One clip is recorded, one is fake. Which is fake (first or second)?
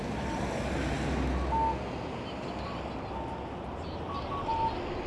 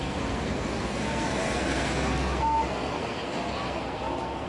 second